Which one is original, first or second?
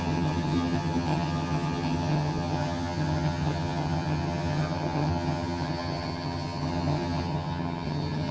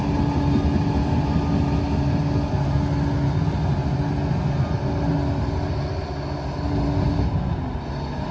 second